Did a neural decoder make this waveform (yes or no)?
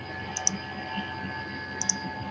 no